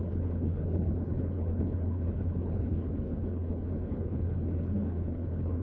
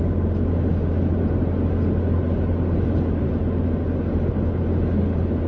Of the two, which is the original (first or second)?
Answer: second